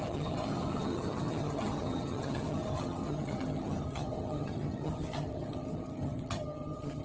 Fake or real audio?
fake